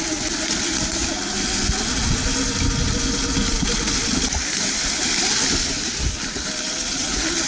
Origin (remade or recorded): recorded